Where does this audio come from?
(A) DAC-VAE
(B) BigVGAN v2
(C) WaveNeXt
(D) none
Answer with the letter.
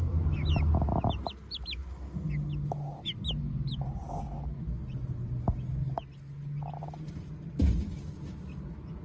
D